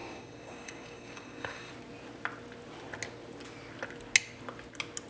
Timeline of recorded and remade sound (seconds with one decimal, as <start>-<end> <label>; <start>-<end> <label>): 0.0-1.7 remade; 1.7-5.1 recorded